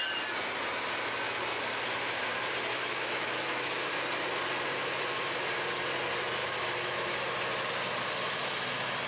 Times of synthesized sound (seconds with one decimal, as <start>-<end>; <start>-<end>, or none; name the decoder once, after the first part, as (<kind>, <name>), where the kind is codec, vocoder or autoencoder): 2.7-3.8 (autoencoder, DAC-VAE); 6.4-7.1